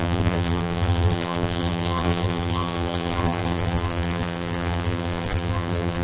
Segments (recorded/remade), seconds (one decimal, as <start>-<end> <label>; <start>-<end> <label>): 0.0-6.0 remade